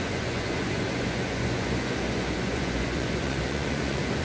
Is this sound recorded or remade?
remade